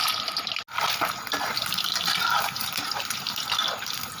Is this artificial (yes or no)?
no